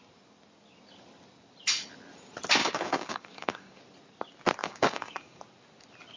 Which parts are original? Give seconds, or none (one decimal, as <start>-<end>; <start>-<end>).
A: 0.0-2.6; 3.8-4.6; 5.4-6.2